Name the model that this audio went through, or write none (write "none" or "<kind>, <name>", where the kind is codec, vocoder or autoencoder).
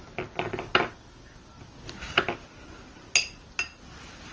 none